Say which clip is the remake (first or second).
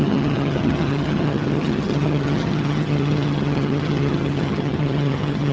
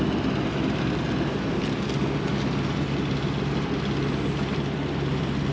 first